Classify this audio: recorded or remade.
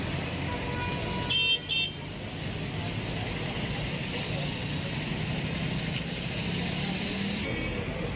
recorded